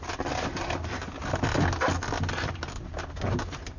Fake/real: real